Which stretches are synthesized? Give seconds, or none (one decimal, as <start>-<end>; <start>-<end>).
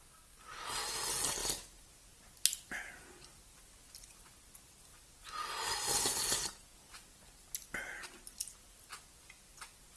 none